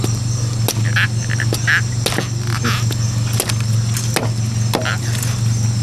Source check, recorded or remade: recorded